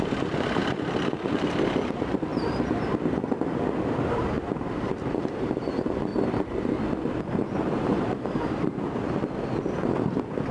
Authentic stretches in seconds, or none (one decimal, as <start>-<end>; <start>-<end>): 2.3-4.1; 6.1-7.2